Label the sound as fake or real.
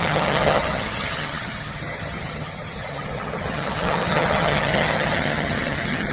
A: fake